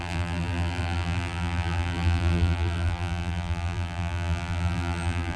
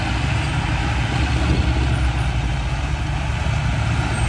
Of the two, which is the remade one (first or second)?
first